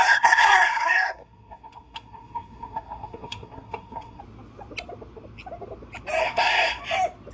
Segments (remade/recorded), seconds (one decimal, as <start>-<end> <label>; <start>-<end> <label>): 0.0-4.2 remade; 4.2-6.2 recorded; 6.2-6.8 remade; 6.8-7.3 recorded